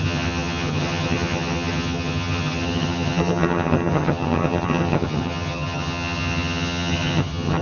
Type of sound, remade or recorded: remade